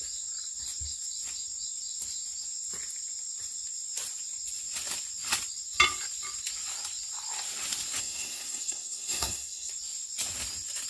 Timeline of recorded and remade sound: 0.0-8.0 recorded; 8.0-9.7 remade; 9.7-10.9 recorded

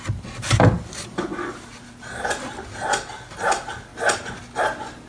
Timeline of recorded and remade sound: 0.0-5.1 recorded

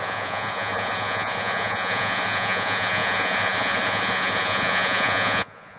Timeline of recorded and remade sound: 0.0-5.8 remade

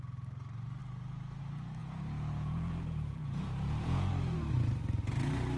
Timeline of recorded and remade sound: 0.0-1.8 recorded; 1.8-4.1 remade; 4.1-5.6 recorded

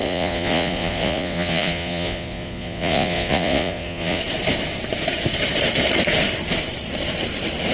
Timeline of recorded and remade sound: 0.0-4.2 remade; 4.2-7.7 recorded

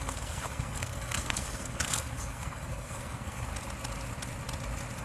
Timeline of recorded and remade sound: 0.0-3.5 remade; 3.5-5.0 recorded

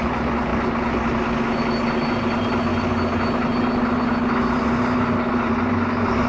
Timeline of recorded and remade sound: 0.0-6.3 recorded